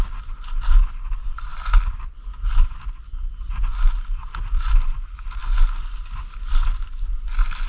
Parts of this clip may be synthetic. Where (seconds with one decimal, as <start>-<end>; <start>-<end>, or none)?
1.5-2.8